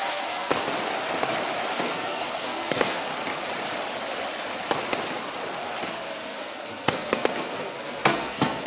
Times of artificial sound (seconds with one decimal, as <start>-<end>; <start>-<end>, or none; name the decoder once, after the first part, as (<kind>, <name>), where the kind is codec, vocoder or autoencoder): 0.0-0.5 (codec, SNAC); 1.8-3.1; 5.9-8.7